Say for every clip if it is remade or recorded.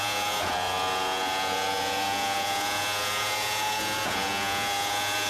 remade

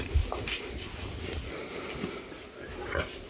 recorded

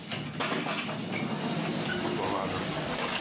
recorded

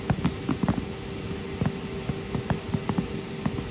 recorded